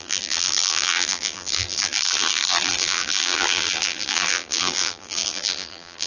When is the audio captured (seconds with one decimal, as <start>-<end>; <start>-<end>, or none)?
none